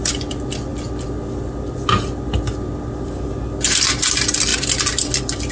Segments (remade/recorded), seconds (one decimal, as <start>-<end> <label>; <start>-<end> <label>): 0.0-5.5 recorded

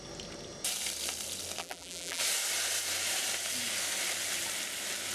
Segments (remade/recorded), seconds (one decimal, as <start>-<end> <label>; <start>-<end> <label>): 0.0-1.6 recorded; 1.6-2.2 remade; 2.2-5.1 recorded